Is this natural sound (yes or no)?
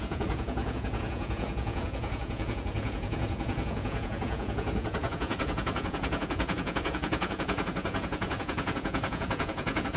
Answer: no